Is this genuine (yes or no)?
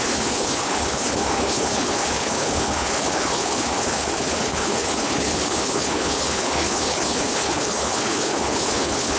no